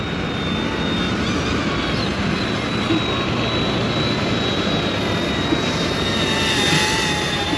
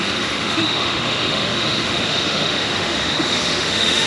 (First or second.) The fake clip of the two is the second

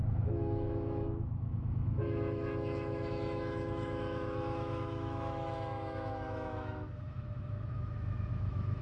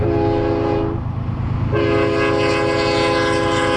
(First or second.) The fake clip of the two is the first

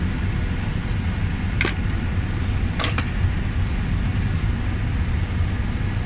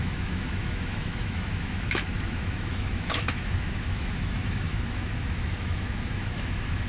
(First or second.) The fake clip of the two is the second